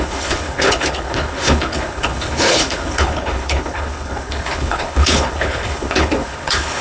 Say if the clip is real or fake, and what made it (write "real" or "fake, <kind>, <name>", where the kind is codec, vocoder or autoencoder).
fake, codec, HILCodec